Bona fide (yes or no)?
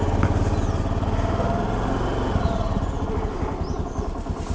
yes